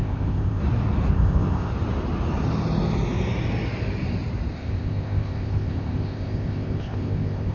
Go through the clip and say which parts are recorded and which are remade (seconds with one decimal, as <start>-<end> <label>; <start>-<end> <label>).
0.0-0.6 remade; 0.6-1.1 recorded; 1.1-1.7 remade; 1.7-4.5 recorded; 4.5-7.5 remade